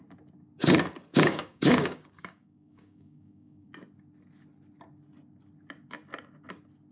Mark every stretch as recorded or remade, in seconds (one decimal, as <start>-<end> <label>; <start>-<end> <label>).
0.0-1.1 recorded; 1.1-3.7 remade; 3.7-6.9 recorded